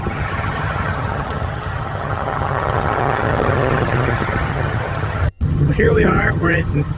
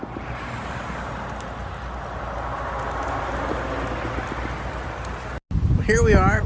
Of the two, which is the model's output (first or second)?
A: first